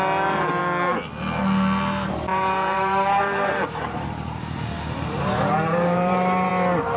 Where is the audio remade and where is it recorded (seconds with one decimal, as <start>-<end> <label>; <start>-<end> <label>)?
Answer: 0.0-2.3 recorded; 2.3-6.5 remade; 6.5-7.0 recorded